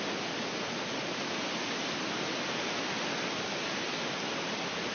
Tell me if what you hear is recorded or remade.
recorded